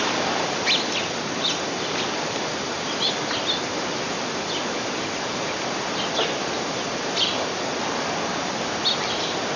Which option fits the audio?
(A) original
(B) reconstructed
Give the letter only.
A